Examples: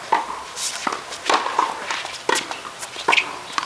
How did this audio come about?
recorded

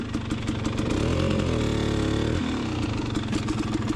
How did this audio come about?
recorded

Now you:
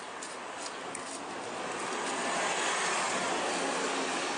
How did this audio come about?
recorded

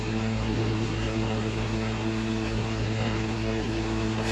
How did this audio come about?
remade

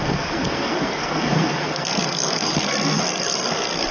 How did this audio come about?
remade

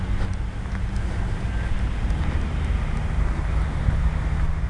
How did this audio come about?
recorded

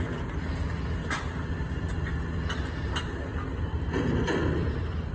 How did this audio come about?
recorded